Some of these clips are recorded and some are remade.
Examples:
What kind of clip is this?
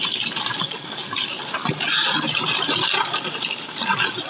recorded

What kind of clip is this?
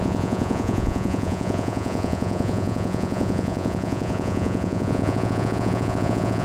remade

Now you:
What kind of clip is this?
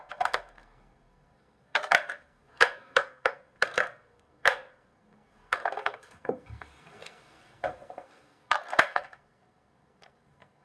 remade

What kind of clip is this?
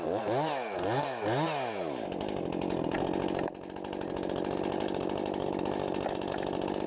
recorded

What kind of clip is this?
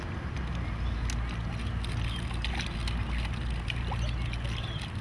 recorded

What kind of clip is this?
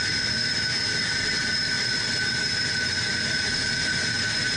recorded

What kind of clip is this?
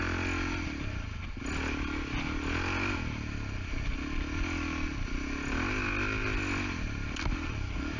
recorded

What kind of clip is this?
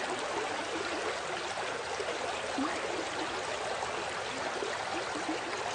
recorded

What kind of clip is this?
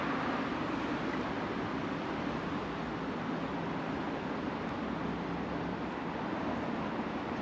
recorded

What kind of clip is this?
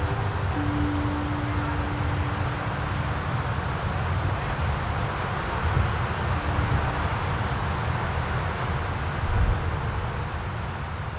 recorded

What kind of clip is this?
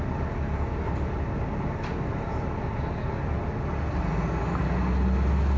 recorded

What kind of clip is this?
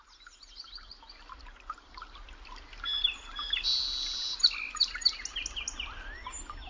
recorded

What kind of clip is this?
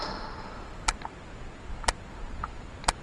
recorded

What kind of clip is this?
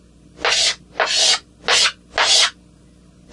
recorded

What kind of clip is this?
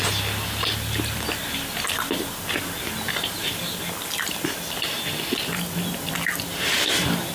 recorded